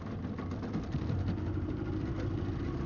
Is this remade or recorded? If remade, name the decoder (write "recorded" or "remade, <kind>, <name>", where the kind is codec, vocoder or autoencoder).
recorded